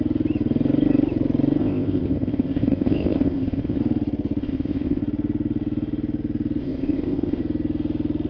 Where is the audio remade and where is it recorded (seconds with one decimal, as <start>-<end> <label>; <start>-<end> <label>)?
0.0-1.6 recorded; 1.6-3.8 remade; 3.8-4.4 recorded; 4.4-5.0 remade; 5.0-6.6 recorded; 6.6-7.4 remade; 7.4-8.3 recorded